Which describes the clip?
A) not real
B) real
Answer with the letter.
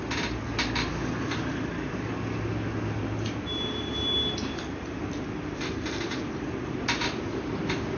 B